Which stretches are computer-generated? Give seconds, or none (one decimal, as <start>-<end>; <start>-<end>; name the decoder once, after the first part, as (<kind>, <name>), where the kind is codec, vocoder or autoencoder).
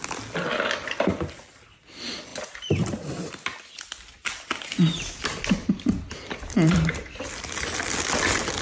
2.3-3.3 (vocoder, BigVGAN v2); 5.6-7.2